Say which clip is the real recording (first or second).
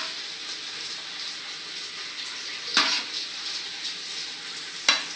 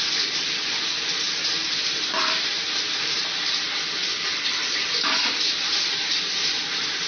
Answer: first